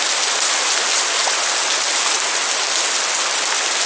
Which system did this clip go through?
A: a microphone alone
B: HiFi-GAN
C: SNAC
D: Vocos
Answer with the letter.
A